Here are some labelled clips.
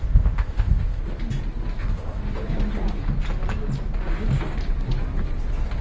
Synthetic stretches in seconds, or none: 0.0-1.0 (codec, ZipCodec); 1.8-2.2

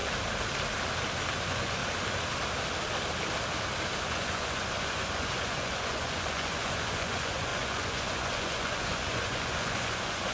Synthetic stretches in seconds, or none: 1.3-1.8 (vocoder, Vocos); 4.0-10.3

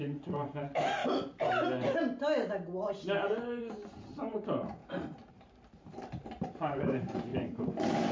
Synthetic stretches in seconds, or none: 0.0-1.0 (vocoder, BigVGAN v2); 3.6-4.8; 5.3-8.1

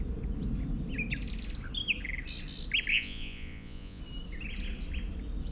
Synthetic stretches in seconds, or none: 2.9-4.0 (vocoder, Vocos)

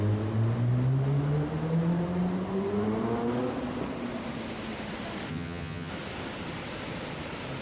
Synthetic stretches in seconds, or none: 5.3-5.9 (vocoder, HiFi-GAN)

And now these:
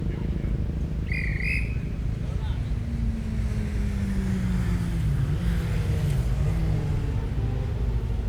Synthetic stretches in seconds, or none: none

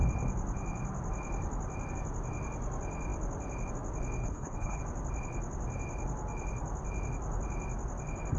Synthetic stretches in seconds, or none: 4.2-4.8 (codec, HILCodec)